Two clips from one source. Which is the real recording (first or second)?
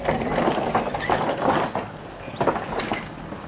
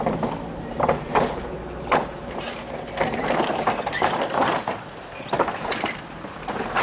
first